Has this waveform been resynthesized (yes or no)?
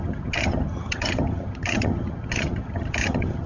yes